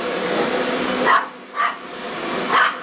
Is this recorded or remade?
remade